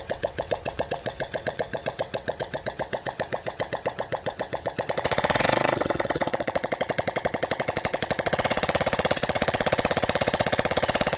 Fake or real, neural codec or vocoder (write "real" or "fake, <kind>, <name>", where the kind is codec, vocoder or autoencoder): fake, vocoder, WaveNeXt